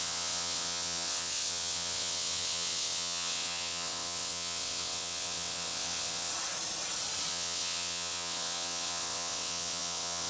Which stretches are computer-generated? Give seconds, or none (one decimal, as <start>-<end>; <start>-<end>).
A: 0.0-6.3; 7.3-10.3